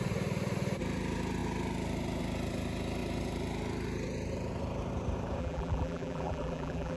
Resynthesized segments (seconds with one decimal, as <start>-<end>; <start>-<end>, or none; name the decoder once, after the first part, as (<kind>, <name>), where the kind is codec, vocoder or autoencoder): 5.4-7.0 (vocoder, BigVGAN v2)